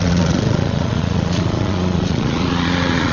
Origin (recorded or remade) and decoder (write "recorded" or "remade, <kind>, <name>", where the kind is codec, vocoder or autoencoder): remade, vocoder, Vocos